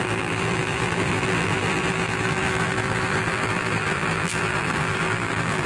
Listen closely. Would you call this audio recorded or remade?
remade